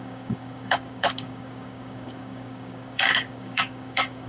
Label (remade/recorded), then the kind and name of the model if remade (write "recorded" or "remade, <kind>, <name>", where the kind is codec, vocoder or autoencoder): remade, codec, DAC